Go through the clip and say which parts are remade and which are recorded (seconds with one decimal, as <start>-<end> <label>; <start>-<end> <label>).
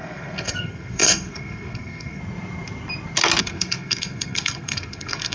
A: 0.0-2.2 remade; 2.2-3.4 recorded; 3.4-5.3 remade